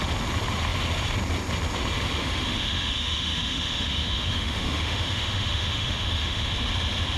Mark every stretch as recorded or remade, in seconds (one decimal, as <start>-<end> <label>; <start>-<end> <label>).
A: 0.0-2.2 recorded; 2.2-6.5 remade; 6.5-7.2 recorded